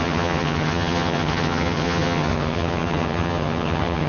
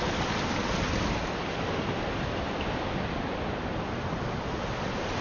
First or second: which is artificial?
first